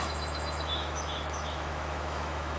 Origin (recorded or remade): remade